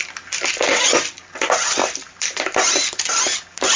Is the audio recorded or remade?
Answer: recorded